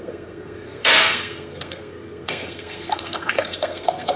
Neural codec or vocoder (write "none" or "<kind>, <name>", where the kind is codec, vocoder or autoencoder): codec, SNAC